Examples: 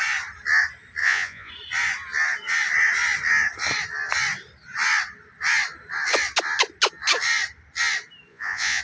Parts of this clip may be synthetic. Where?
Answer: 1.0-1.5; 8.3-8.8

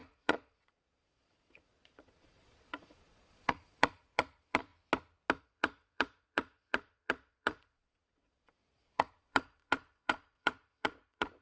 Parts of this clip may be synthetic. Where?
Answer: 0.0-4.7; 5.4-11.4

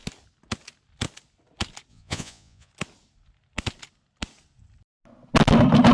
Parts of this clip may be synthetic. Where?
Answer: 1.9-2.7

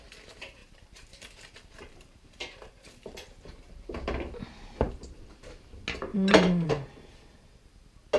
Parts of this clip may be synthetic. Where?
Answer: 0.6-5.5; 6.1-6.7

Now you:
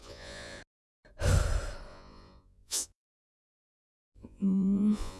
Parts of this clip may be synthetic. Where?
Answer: 0.0-0.6; 1.9-5.2

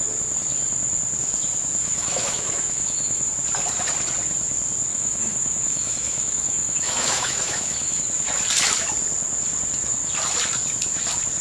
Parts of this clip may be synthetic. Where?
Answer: 1.8-3.3; 4.9-8.0

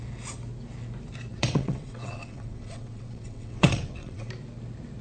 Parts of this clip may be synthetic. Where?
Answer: 1.3-4.3